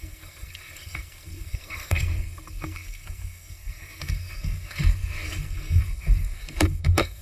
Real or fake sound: fake